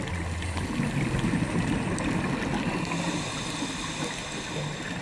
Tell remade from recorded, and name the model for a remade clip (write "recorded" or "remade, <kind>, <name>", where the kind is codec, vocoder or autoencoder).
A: recorded